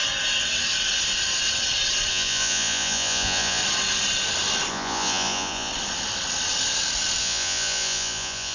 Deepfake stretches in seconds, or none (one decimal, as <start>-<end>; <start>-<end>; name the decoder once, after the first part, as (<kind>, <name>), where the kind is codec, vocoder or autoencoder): 2.1-3.6 (vocoder, Vocos); 4.7-5.7; 7.2-8.5